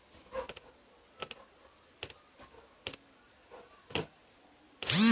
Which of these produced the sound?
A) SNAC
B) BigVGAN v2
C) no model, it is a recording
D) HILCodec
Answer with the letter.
C